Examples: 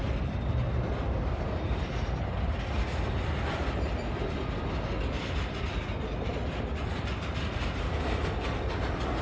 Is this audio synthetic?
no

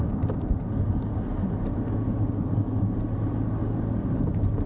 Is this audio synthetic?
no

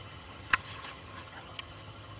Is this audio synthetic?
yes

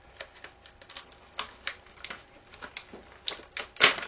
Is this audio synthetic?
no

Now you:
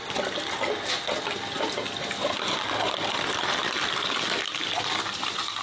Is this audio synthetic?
no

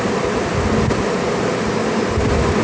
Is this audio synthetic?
no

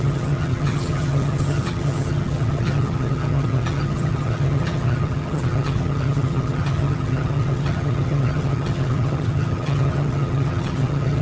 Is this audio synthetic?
yes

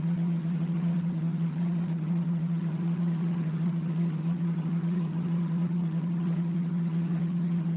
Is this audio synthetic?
yes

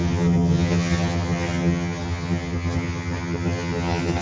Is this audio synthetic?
yes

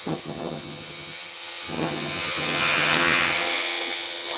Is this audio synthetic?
yes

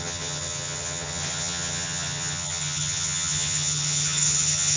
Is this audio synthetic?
yes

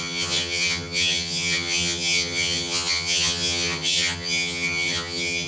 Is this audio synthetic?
yes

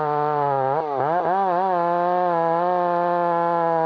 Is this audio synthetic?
no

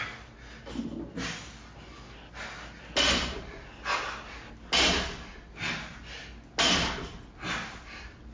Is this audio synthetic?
no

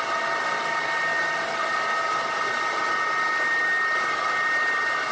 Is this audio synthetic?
no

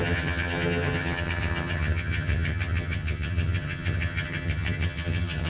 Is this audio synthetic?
yes